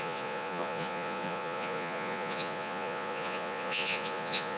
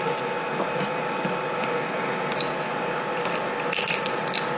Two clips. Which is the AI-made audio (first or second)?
first